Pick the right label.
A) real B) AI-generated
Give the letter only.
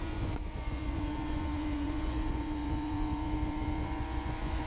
B